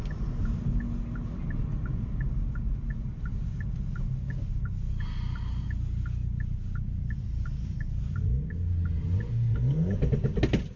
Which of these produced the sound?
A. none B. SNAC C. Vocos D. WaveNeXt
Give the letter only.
A